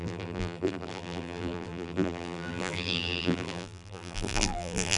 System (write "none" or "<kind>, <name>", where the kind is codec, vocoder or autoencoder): vocoder, BigVGAN v2